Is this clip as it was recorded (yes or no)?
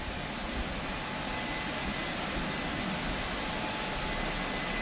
yes